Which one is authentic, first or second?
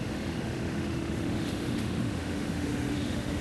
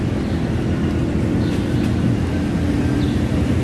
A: second